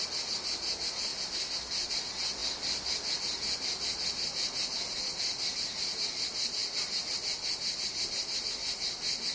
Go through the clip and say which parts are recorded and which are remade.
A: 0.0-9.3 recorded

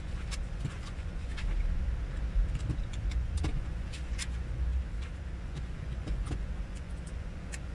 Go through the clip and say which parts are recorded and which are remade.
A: 0.0-1.3 remade; 1.3-2.8 recorded; 2.8-4.7 remade; 4.7-5.4 recorded; 5.4-7.7 remade

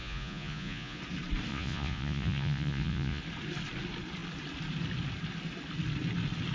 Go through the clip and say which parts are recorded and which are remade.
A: 0.0-1.0 remade; 1.0-1.5 recorded; 1.5-3.2 remade; 3.2-6.5 recorded

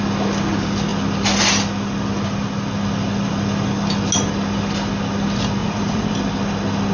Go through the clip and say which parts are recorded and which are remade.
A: 0.0-5.6 recorded; 5.6-6.1 remade; 6.1-6.9 recorded

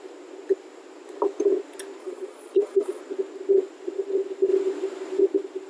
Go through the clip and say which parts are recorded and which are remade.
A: 0.0-2.0 recorded; 2.0-3.0 remade; 3.0-5.7 recorded

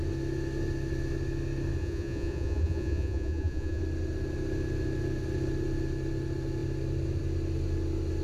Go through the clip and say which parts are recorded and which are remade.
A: 0.0-1.8 recorded; 1.8-3.8 remade; 3.8-8.2 recorded